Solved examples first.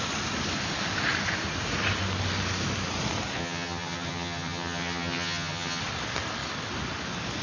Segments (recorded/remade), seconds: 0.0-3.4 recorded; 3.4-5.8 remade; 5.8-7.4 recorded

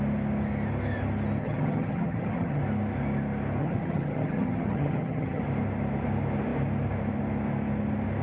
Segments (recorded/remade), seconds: 0.0-1.4 recorded; 1.4-2.6 remade; 2.6-3.6 recorded; 3.6-5.4 remade; 5.4-8.2 recorded